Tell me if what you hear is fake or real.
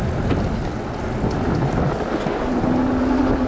real